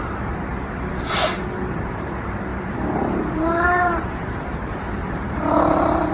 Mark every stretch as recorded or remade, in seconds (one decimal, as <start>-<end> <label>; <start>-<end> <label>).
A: 0.0-0.5 remade; 0.5-1.7 recorded; 1.7-2.5 remade; 2.5-3.0 recorded; 3.0-6.1 remade